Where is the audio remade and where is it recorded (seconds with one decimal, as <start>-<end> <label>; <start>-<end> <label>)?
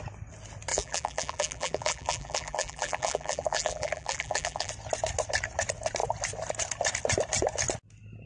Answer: 0.0-0.7 recorded; 0.7-4.7 remade; 4.7-8.3 recorded